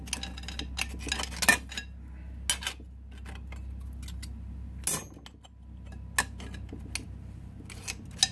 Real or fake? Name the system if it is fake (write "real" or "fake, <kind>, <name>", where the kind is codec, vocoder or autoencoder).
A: real